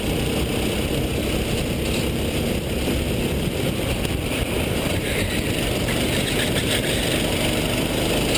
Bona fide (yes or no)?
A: no